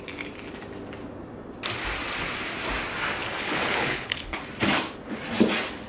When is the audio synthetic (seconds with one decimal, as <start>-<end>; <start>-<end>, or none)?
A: 3.2-4.4